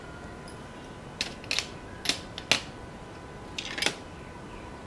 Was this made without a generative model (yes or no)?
yes